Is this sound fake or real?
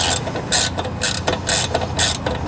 real